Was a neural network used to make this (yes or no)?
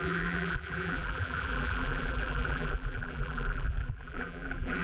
yes